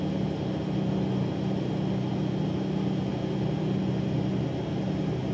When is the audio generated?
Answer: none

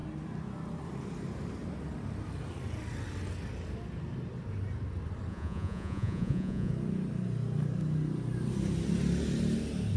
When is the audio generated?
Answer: 5.3-6.7

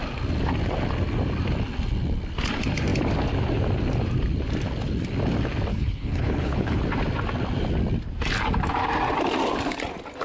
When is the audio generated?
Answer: 5.7-6.8

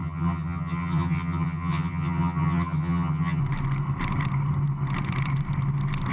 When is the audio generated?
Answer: 0.0-3.4

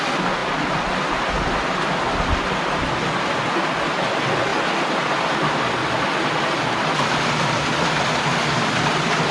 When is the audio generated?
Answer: none

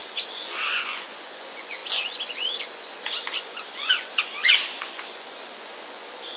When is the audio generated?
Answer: 0.0-6.4